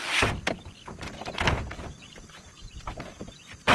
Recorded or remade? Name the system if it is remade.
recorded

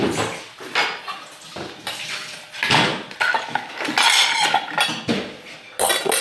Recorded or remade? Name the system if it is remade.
recorded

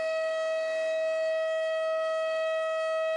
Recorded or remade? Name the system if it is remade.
remade, autoencoder, DAC-VAE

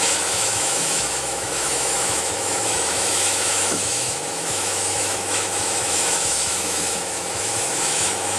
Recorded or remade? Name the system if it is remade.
remade, autoencoder, DAC-VAE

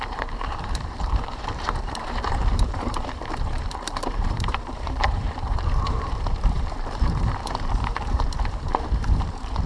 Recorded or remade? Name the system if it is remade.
remade, vocoder, BigVGAN v2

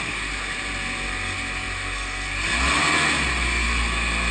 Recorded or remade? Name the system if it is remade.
recorded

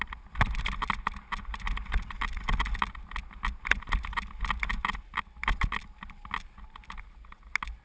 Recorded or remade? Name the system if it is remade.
recorded